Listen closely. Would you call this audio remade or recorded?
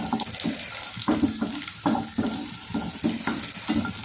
recorded